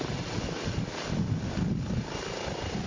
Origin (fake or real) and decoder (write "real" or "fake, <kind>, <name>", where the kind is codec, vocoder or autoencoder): real